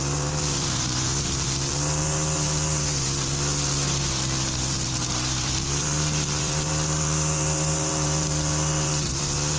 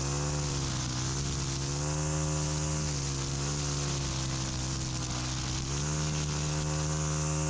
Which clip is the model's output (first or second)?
first